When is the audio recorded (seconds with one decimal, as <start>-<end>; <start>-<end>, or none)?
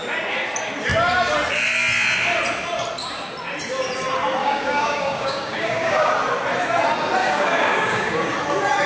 0.0-4.4; 6.1-7.2; 8.3-8.9